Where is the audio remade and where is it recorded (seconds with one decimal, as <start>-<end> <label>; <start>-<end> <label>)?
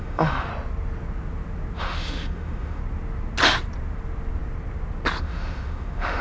0.0-0.5 remade; 0.5-1.8 recorded; 1.8-2.8 remade; 2.8-5.2 recorded; 5.2-6.2 remade